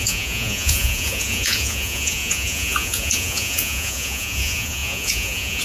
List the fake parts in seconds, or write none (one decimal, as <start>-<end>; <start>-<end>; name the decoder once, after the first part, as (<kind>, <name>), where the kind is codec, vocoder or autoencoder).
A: 0.0-5.6 (vocoder, Vocos)